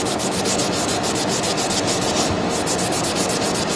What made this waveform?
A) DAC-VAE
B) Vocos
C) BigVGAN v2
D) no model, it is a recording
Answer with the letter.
D